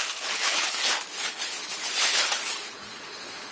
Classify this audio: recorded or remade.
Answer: remade